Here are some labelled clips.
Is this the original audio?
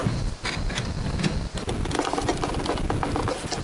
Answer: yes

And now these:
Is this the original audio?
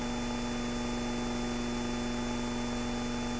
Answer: yes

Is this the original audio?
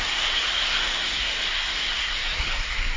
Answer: no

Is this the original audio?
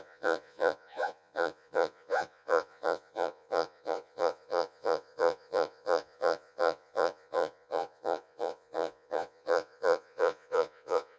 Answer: no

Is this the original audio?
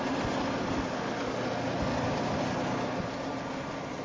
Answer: yes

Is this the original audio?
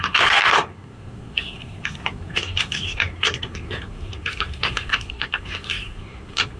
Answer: no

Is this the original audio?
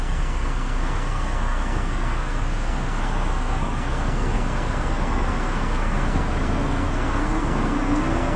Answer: no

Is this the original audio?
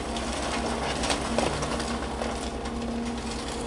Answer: yes